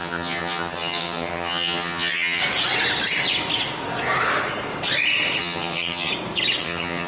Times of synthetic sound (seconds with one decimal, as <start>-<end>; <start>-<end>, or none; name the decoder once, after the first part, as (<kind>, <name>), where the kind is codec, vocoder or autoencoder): 0.0-2.4 (vocoder, HiFi-GAN); 5.4-6.1; 6.6-7.1